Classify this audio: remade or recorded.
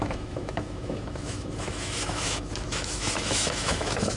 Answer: remade